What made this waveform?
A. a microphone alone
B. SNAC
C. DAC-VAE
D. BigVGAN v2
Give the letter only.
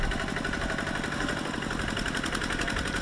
A